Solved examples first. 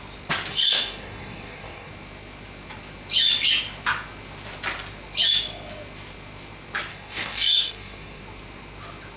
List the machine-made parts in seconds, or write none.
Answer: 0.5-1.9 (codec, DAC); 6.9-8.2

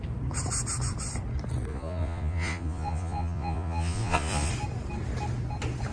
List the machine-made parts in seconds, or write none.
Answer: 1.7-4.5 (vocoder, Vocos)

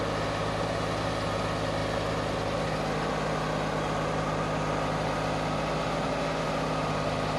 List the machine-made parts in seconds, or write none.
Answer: none

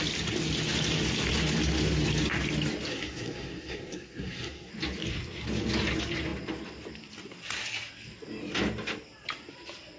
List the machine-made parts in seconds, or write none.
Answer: 2.9-4.7 (codec, SNAC)

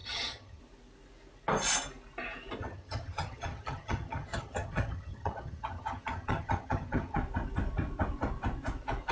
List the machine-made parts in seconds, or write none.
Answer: 0.0-0.6 (vocoder, HiFi-GAN); 2.6-7.2

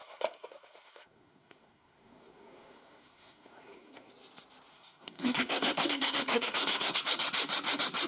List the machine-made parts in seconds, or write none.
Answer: 0.0-4.1 (codec, SNAC); 4.7-7.0